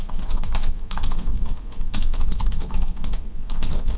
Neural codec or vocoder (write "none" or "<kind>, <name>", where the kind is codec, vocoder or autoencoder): codec, SNAC